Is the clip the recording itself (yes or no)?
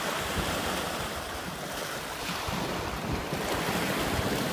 no